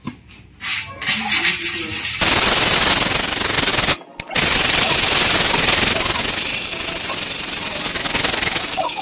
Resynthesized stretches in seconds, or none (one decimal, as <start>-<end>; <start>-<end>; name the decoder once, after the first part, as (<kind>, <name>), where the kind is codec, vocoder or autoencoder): none